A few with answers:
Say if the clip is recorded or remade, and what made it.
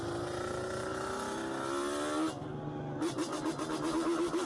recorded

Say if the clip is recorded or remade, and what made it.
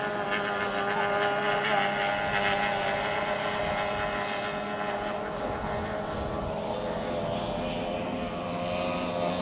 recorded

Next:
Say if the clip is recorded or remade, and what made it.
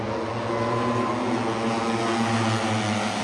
recorded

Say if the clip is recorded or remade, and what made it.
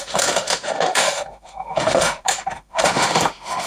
remade, autoencoder, DAC-VAE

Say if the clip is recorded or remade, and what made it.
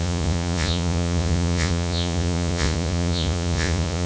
remade, vocoder, Vocos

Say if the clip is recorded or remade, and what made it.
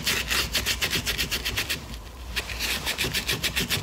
recorded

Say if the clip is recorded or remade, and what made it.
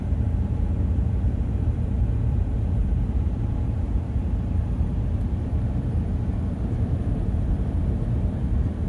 remade, vocoder, BigVGAN v2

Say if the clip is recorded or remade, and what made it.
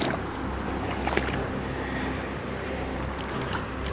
recorded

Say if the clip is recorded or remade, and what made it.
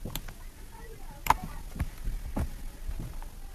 recorded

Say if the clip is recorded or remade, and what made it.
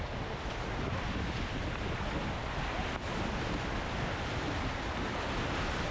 recorded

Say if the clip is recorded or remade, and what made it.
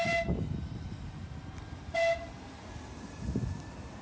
recorded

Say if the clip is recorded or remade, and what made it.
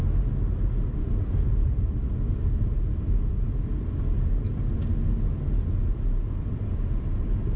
recorded